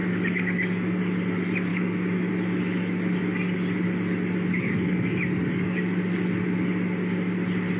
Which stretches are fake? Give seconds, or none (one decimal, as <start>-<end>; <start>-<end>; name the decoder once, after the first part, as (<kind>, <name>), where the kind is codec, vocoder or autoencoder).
0.0-1.0 (codec, DAC); 1.7-2.3; 4.5-5.8